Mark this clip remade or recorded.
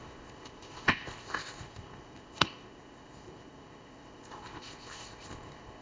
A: remade